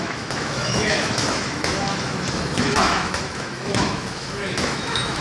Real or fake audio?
fake